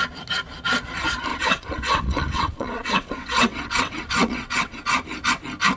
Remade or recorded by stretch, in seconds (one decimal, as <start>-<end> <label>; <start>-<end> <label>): 0.0-1.3 recorded; 1.3-4.8 remade; 4.8-5.8 recorded